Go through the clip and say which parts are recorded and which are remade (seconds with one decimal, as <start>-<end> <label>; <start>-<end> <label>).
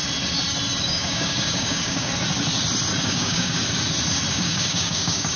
0.0-0.8 recorded; 0.8-2.1 remade; 2.1-3.0 recorded; 3.0-3.6 remade; 3.6-4.3 recorded; 4.3-5.4 remade